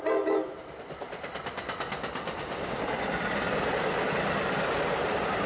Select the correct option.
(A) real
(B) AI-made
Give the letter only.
A